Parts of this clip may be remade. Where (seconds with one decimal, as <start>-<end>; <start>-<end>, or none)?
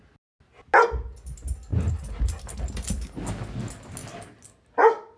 none